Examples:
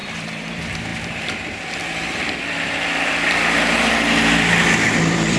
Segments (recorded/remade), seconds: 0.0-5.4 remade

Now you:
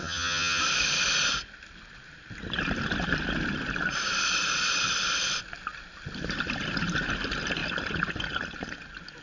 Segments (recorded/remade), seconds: 0.0-0.6 remade; 0.6-9.2 recorded

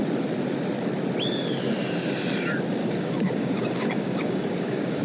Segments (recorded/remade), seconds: 0.0-2.8 recorded; 2.8-5.0 remade

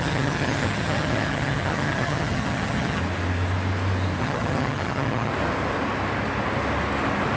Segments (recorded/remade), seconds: 0.0-3.0 remade; 3.0-4.2 recorded; 4.2-5.3 remade; 5.3-7.4 recorded

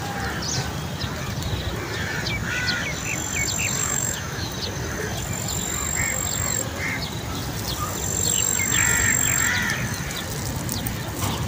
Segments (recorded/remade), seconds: 0.0-3.8 recorded; 3.8-4.5 remade; 4.5-11.5 recorded

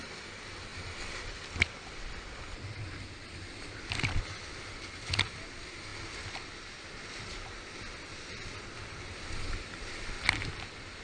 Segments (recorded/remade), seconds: 0.0-11.0 recorded

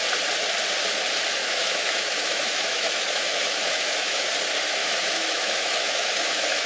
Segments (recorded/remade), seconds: 0.0-1.4 recorded; 1.4-4.3 remade; 4.3-4.8 recorded; 4.8-6.7 remade

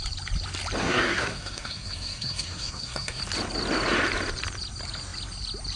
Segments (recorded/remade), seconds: 0.0-0.8 recorded; 0.8-3.2 remade; 3.2-5.8 recorded